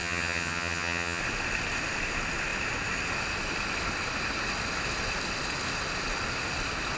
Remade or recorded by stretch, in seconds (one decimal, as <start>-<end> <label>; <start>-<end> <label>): 0.0-1.2 remade; 1.2-7.0 recorded